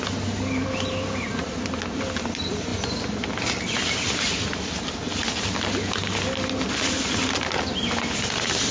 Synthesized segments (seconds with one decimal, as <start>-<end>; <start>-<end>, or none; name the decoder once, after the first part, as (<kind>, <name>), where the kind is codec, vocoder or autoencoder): none